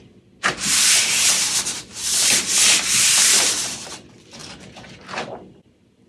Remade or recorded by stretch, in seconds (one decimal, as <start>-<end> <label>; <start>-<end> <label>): 0.0-6.1 recorded